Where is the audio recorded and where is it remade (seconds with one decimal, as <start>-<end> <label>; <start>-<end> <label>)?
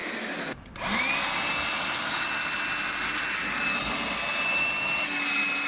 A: 0.0-5.7 recorded